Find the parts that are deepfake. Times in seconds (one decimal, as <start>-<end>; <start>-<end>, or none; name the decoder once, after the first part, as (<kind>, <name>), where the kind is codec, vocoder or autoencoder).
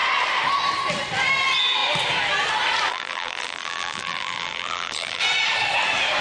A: 2.9-5.2 (vocoder, BigVGAN v2)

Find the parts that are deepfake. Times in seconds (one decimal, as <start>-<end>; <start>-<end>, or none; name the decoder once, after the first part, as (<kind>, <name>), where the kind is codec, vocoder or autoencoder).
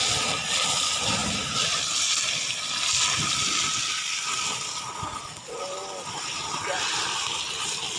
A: none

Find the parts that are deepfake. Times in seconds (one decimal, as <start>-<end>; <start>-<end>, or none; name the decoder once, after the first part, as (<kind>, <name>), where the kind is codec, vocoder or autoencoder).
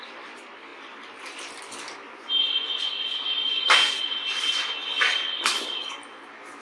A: 3.1-4.0 (codec, DAC); 4.9-5.9